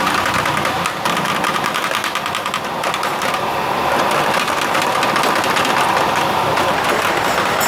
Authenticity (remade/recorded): recorded